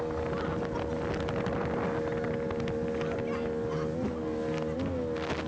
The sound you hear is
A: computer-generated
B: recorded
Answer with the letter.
B